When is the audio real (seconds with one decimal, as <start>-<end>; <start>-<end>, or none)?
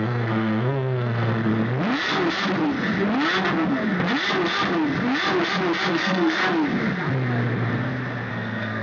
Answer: 1.5-5.9; 6.4-8.3